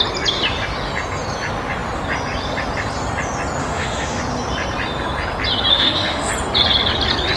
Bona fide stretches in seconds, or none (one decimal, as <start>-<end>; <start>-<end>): 0.0-3.6; 4.2-5.7; 6.3-7.4